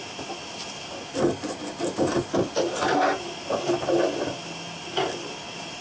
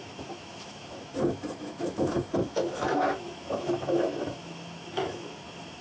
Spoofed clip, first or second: second